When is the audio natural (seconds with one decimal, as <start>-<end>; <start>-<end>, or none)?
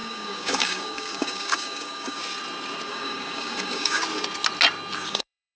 2.2-2.9; 4.0-5.1